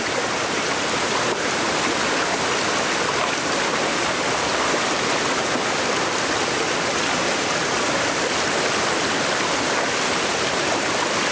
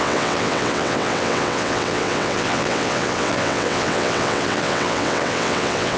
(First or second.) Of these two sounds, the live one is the first